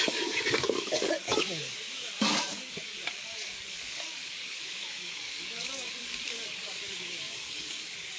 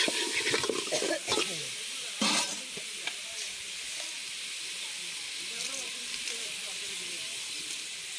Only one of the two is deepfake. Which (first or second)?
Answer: first